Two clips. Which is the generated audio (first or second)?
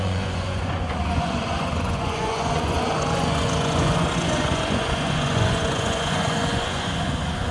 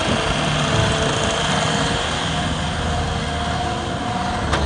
first